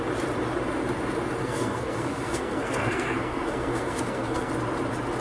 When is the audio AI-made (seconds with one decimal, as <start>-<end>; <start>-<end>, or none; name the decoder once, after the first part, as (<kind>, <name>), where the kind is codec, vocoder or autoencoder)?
1.4-4.5 (codec, SNAC)